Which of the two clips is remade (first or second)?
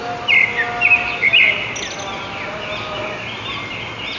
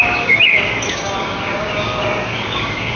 second